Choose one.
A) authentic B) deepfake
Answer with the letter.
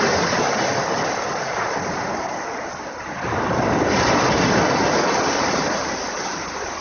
A